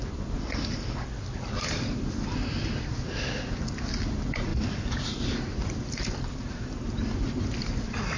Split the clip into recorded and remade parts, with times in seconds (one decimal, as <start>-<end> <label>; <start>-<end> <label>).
0.0-8.2 recorded